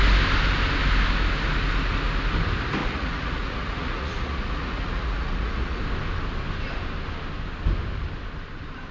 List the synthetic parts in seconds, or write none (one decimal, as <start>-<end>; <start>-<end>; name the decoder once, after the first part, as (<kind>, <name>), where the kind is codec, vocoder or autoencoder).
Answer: 2.8-5.8 (vocoder, Vocos)